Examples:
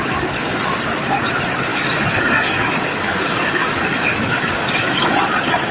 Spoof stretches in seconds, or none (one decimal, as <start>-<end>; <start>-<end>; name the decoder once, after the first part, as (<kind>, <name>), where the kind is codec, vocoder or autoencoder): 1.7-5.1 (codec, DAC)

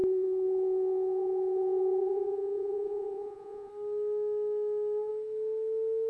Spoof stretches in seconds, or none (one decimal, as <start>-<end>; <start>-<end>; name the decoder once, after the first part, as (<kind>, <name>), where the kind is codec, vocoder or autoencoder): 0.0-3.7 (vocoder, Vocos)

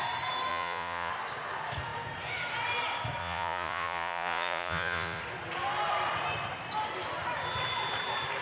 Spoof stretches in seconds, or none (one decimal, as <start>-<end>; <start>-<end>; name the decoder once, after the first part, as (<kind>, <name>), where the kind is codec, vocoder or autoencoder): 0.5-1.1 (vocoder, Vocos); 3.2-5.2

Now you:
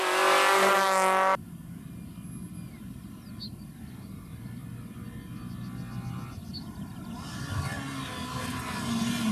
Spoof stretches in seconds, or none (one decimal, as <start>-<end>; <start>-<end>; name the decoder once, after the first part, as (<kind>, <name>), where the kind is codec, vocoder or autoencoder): none

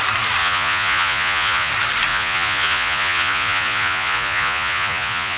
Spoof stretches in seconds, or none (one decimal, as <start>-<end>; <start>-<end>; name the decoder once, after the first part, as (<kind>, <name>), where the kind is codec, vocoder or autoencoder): 0.4-1.7 (vocoder, Vocos); 2.1-5.4